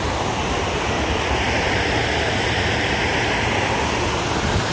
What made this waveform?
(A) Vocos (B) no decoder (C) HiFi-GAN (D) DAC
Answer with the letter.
B